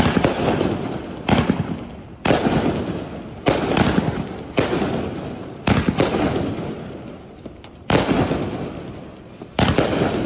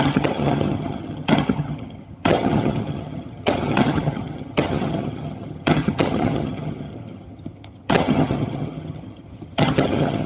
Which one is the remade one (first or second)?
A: second